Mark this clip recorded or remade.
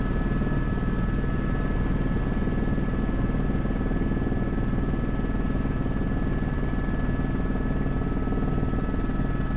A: recorded